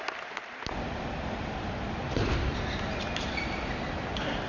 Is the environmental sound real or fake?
real